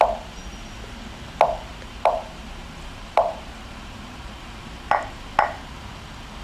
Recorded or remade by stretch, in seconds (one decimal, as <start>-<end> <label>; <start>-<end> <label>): 0.0-1.7 recorded; 1.7-5.3 remade; 5.3-6.4 recorded